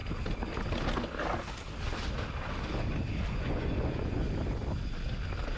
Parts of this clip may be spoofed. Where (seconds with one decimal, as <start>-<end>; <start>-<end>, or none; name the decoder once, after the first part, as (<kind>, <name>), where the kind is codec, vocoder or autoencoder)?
3.3-4.2 (vocoder, Vocos)